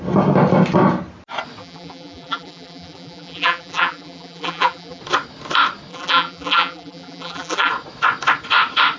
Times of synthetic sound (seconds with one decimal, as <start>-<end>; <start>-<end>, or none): 1.6-5.0; 5.9-7.7